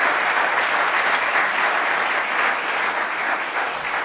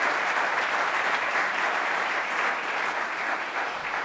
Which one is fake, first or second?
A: second